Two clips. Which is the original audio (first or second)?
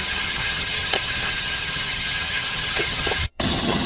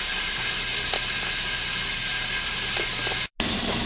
second